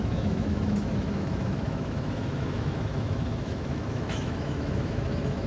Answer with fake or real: fake